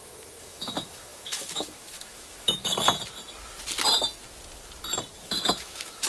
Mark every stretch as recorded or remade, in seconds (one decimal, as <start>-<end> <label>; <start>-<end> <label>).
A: 0.0-2.7 remade; 2.7-5.2 recorded; 5.2-6.1 remade